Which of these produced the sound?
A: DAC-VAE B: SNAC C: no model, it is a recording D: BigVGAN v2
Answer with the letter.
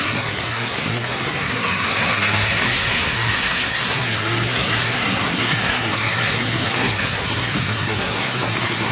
B